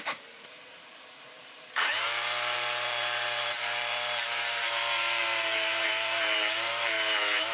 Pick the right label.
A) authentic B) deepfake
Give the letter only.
B